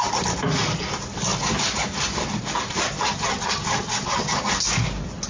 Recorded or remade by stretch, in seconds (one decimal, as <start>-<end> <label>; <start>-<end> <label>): 0.0-3.1 recorded; 3.1-4.5 remade; 4.5-5.3 recorded